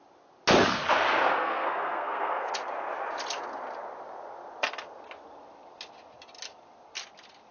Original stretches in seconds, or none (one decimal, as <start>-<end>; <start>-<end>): 0.0-1.4; 2.5-7.5